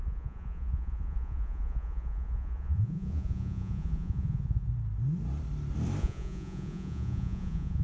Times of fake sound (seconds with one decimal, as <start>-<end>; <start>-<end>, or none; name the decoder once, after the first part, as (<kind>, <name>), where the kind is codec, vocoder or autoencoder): 0.0-4.7 (vocoder, Vocos); 6.0-7.8